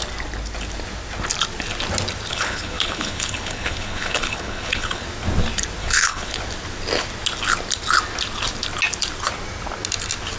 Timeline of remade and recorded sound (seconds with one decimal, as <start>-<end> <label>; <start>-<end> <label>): 0.0-2.3 recorded; 2.3-5.0 remade; 5.0-5.8 recorded; 5.8-6.4 remade; 6.4-10.4 recorded